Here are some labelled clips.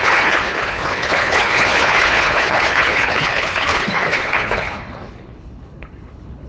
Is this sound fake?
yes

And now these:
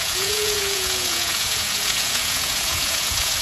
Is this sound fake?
yes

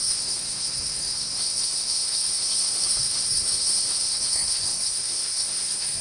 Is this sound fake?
yes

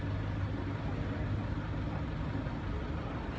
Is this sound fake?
no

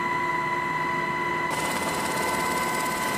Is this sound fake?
no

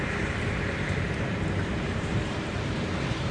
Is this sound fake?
yes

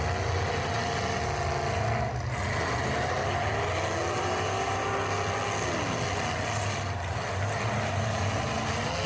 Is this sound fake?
no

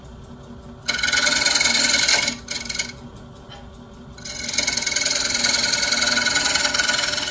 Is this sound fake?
no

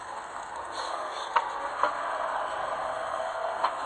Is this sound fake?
yes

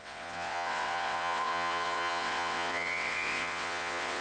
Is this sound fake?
yes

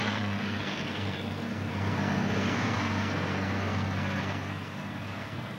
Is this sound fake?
yes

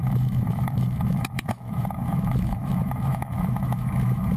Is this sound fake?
yes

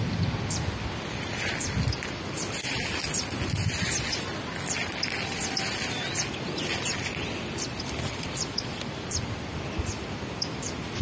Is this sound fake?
no